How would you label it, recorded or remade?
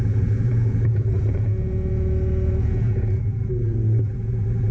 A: remade